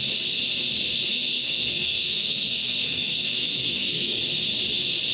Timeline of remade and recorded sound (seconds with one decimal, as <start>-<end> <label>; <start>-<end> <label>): 0.0-1.1 recorded; 1.1-4.2 remade; 4.2-5.1 recorded